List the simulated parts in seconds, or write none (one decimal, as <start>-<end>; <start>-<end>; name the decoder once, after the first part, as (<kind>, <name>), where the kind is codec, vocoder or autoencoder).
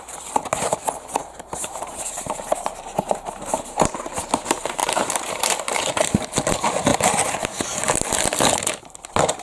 1.2-3.5 (vocoder, BigVGAN v2); 4.8-5.6; 6.9-7.6